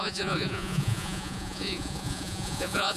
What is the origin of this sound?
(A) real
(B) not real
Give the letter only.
B